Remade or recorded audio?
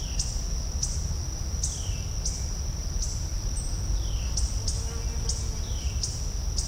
recorded